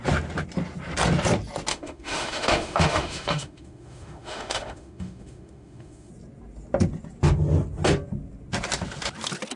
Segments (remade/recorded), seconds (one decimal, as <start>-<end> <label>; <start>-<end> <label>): 0.0-1.7 recorded; 1.7-6.1 remade; 6.1-9.6 recorded